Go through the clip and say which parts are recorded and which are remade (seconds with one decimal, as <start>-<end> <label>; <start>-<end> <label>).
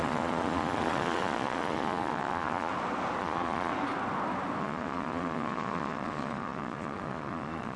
0.0-2.7 remade; 2.7-3.2 recorded; 3.2-3.7 remade; 3.7-4.6 recorded; 4.6-7.8 remade